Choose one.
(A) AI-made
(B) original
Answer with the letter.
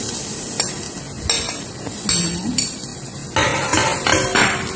B